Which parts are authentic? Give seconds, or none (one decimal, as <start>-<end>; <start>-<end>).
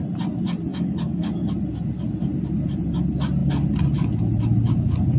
0.0-0.7; 1.5-5.2